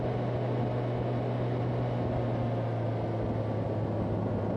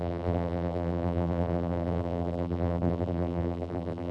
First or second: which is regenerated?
second